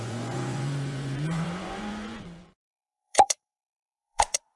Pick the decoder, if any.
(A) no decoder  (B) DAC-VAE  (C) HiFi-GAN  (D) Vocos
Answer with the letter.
D